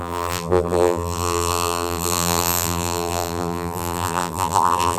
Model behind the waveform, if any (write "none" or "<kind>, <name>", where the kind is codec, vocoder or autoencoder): vocoder, BigVGAN v2